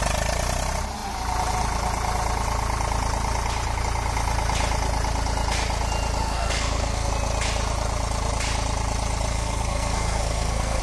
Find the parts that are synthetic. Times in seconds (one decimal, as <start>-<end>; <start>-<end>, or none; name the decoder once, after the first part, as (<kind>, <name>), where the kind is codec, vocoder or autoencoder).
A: 6.2-7.1 (codec, SNAC); 9.3-10.8